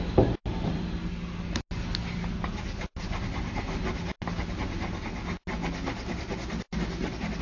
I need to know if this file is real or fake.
real